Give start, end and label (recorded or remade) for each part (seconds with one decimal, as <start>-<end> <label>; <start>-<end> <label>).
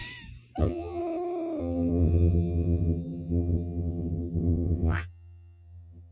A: 0.0-0.6 recorded; 0.6-1.0 remade; 1.0-1.6 recorded; 1.6-6.1 remade